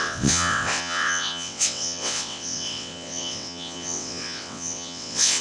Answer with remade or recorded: remade